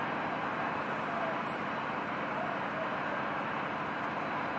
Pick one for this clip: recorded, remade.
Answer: recorded